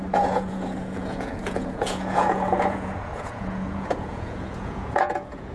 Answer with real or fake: fake